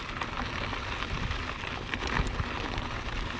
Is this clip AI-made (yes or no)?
no